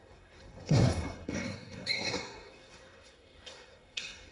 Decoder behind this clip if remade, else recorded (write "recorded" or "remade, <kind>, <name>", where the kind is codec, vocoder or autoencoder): remade, codec, SNAC